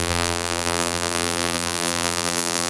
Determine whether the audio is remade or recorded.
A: remade